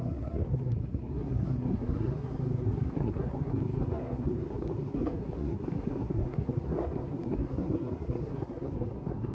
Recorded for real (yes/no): no